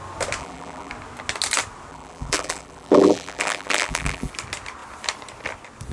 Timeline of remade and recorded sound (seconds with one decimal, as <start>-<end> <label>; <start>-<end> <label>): 0.0-0.4 recorded; 0.4-0.9 remade; 0.9-1.9 recorded; 1.9-4.3 remade; 4.3-5.9 recorded